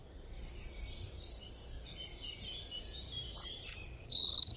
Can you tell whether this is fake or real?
real